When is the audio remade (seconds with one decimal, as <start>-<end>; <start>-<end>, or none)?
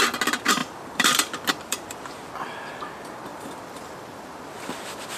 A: 0.6-2.3; 3.3-4.3